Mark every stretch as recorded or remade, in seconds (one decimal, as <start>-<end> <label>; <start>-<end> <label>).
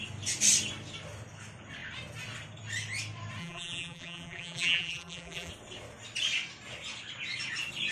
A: 0.0-3.4 recorded; 3.4-5.5 remade; 5.5-7.9 recorded